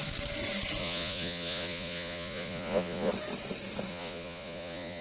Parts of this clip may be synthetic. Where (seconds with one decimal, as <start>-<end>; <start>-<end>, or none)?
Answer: 0.8-3.1; 3.9-5.0